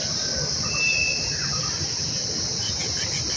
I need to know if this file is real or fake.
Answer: real